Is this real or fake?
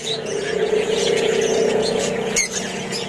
fake